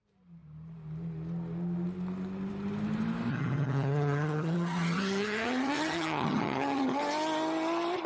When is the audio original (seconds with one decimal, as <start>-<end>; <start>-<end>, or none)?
0.0-3.3; 7.0-8.1